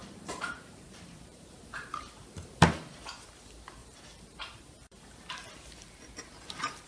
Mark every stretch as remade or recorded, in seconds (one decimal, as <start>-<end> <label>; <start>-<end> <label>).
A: 0.0-2.2 remade; 2.2-3.8 recorded; 3.8-5.2 remade; 5.2-6.9 recorded